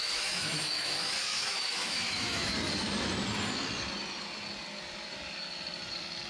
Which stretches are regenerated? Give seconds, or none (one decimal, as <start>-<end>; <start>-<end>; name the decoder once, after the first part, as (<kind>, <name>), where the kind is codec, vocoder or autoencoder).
0.0-2.5 (autoencoder, DAC-VAE)